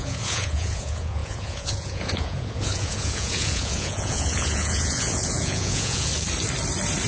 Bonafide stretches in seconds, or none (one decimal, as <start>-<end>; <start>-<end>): 6.1-7.1